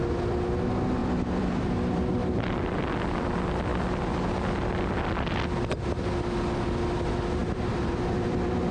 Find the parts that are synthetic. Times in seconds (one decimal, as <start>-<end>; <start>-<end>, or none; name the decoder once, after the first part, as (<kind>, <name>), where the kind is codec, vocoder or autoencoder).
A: 1.0-2.8 (vocoder, BigVGAN v2); 7.4-8.7